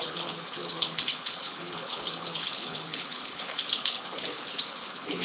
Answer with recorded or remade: remade